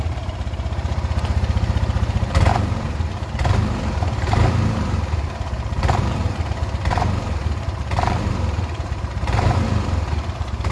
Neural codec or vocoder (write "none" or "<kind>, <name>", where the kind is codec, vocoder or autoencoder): vocoder, BigVGAN v2